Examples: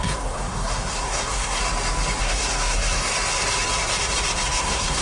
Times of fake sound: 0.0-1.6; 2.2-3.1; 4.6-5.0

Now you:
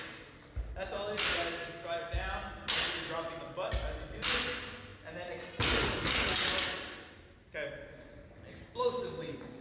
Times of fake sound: none

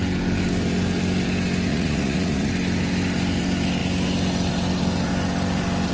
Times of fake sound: 1.7-2.5

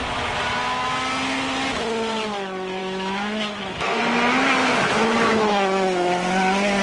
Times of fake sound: 2.8-4.0; 4.6-6.1

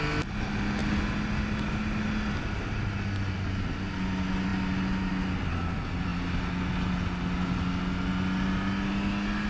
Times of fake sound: none

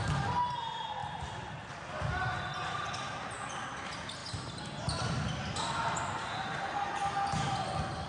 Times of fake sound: 1.0-1.7